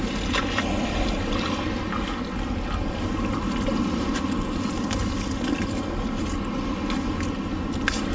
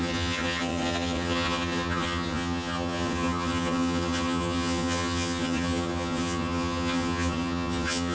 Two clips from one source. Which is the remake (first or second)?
second